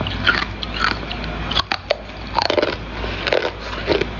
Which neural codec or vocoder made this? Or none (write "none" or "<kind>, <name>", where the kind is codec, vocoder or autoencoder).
none